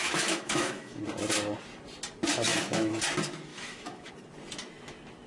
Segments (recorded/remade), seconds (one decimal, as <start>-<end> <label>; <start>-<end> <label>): 0.0-1.0 remade; 1.0-2.5 recorded; 2.5-3.0 remade; 3.0-3.5 recorded; 3.5-4.1 remade; 4.1-5.3 recorded